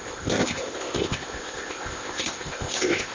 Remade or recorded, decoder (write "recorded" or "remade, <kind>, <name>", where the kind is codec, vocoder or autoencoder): remade, codec, ZipCodec